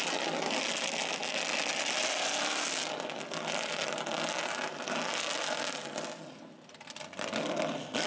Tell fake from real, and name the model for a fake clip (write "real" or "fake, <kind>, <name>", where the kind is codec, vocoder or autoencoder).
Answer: real